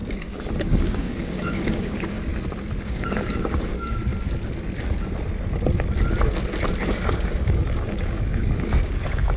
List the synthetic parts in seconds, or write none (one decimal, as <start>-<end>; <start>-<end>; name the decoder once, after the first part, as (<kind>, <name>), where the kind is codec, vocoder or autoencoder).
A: 0.0-2.3 (codec, DAC); 2.8-4.1; 6.9-9.4